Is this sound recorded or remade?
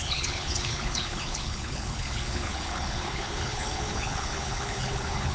remade